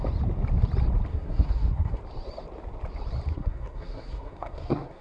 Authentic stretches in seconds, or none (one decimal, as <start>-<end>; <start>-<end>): 0.0-1.1; 2.0-3.3